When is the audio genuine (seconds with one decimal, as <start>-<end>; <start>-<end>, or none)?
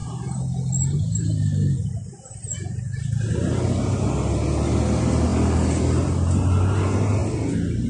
0.0-7.9